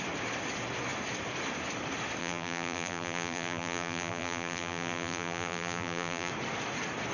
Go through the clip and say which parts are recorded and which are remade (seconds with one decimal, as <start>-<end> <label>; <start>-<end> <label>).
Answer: 0.0-2.2 recorded; 2.2-6.3 remade; 6.3-7.1 recorded